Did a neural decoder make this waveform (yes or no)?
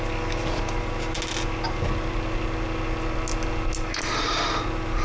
no